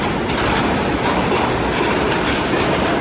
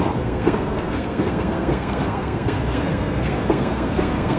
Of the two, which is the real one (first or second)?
first